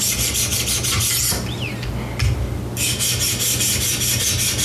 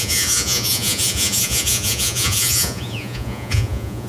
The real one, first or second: first